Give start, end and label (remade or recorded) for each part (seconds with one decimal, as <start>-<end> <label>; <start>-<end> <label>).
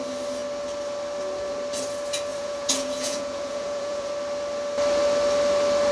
0.0-2.3 recorded; 2.3-4.1 remade; 4.1-5.9 recorded